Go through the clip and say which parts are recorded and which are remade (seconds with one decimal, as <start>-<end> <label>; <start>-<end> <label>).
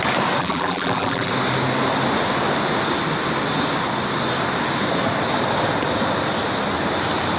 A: 0.0-0.4 recorded; 0.4-1.3 remade; 1.3-7.4 recorded